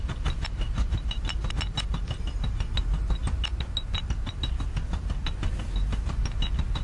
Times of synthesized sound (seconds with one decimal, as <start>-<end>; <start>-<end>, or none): none